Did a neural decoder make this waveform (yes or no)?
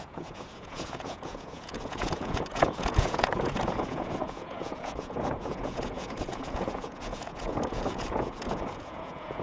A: yes